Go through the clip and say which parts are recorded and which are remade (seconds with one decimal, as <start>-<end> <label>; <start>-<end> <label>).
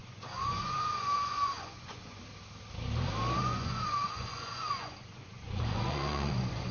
0.0-2.2 remade; 2.2-3.4 recorded; 3.4-6.7 remade